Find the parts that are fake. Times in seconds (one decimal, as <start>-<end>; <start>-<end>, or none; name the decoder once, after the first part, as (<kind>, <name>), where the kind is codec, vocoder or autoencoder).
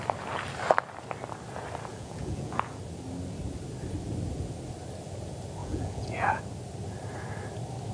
1.9-2.8 (vocoder, Vocos); 5.6-6.4